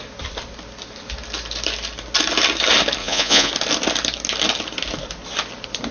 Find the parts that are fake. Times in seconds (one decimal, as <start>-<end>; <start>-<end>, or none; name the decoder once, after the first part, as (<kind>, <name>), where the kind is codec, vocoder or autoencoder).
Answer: 3.0-3.5 (vocoder, Vocos)